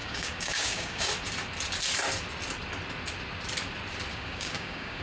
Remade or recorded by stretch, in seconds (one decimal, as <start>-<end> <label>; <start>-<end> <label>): 0.0-1.1 remade; 1.1-4.1 recorded; 4.1-5.0 remade